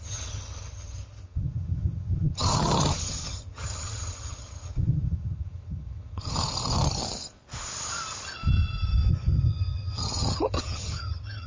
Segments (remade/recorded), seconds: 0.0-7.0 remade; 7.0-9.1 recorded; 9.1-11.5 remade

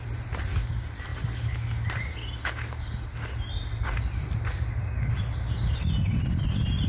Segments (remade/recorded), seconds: 0.0-6.9 recorded

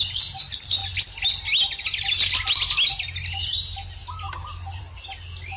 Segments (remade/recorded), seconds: 0.0-5.6 recorded

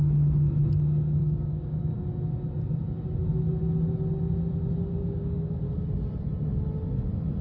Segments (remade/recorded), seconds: 0.0-1.2 recorded; 1.2-1.8 remade; 1.8-5.0 recorded; 5.0-5.6 remade; 5.6-7.4 recorded

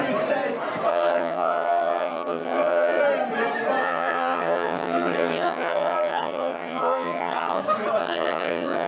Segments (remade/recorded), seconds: 0.0-0.9 recorded; 0.9-3.0 remade; 3.0-3.8 recorded; 3.8-7.6 remade; 7.6-8.0 recorded; 8.0-8.9 remade